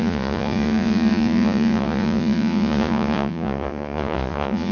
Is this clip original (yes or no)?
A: no